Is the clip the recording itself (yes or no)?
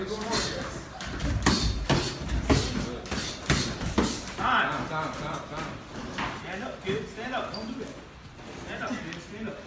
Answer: yes